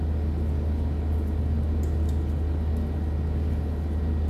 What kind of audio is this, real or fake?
real